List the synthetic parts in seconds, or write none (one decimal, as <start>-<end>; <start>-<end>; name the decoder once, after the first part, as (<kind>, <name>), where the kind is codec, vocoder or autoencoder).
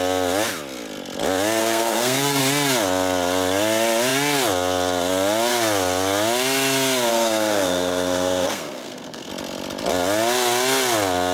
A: 1.6-2.4 (codec, SNAC); 7.1-9.3